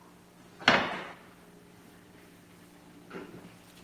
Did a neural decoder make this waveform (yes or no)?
no